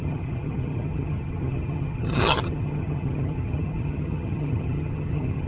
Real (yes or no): no